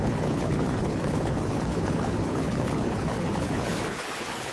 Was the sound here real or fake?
fake